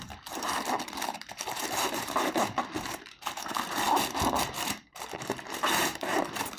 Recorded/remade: remade